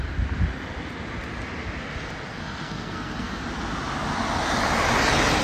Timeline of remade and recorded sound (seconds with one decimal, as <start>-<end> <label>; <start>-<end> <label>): 0.0-2.3 recorded; 2.3-3.4 remade; 3.4-5.4 recorded